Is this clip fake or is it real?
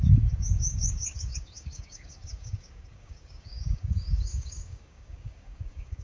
fake